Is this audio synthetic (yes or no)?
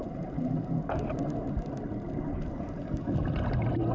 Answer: no